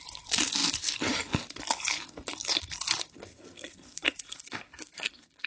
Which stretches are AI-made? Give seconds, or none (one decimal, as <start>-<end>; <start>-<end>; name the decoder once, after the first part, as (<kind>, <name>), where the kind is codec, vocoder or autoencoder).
3.3-5.5 (codec, SNAC)